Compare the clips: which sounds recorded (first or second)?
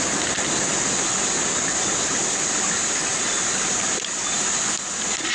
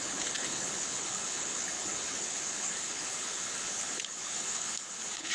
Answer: first